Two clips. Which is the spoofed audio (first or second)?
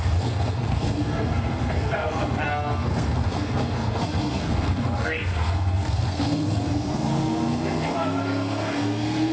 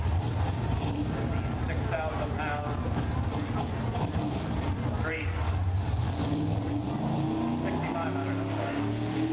first